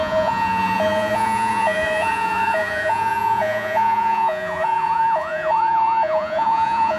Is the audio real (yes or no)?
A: no